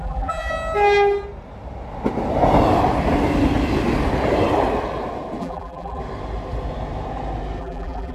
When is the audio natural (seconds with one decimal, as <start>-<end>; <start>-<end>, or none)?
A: 0.5-5.4; 6.0-7.6

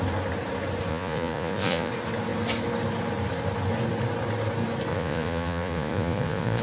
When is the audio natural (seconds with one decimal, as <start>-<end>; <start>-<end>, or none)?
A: 0.0-0.9; 1.9-4.9

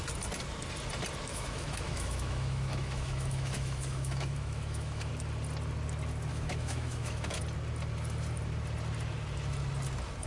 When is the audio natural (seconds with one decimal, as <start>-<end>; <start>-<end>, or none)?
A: 0.0-1.3; 5.1-6.3; 7.4-10.3

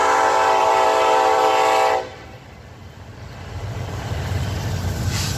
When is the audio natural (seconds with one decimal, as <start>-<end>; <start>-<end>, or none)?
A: 1.5-2.1